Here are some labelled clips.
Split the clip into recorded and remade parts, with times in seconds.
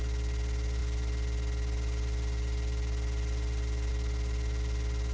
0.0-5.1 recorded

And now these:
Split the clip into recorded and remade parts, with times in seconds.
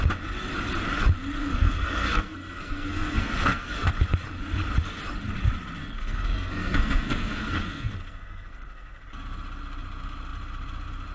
0.0-1.4 recorded; 1.4-3.9 remade; 3.9-5.8 recorded; 5.8-9.0 remade; 9.0-11.1 recorded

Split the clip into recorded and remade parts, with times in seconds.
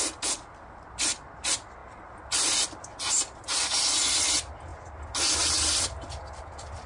0.0-6.9 recorded